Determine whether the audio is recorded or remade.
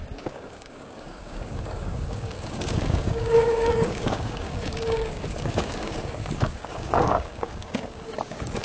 remade